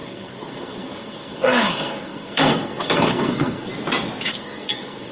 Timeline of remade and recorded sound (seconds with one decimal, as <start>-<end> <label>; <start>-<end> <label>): 0.0-3.7 remade; 3.7-4.3 recorded; 4.3-5.1 remade